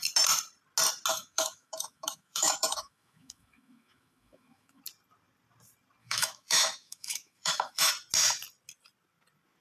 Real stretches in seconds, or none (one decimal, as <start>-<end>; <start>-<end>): 0.0-1.1; 4.8-6.0; 7.9-9.6